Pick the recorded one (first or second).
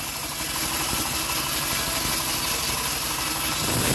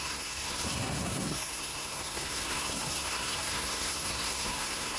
first